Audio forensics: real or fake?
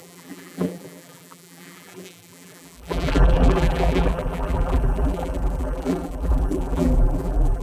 fake